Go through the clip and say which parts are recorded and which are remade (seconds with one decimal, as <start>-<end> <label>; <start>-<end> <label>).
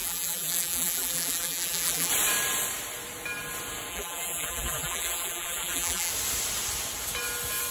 0.0-2.1 remade; 2.1-3.9 recorded; 3.9-6.1 remade; 6.1-7.7 recorded